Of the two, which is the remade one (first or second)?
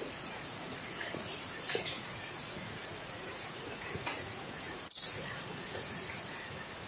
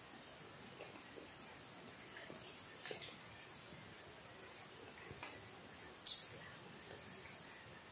first